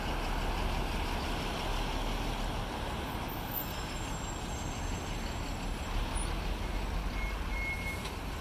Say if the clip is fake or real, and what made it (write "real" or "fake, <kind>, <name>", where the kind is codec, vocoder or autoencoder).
real